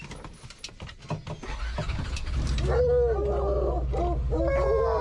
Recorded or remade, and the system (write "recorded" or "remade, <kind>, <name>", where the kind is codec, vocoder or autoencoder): recorded